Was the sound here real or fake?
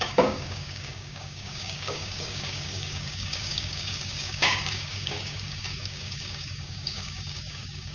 fake